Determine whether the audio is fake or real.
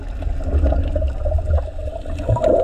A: real